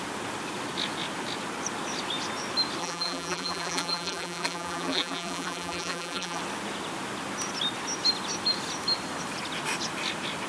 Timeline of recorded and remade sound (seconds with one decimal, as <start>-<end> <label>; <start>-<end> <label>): 0.0-2.8 recorded; 2.8-6.4 remade; 6.4-10.5 recorded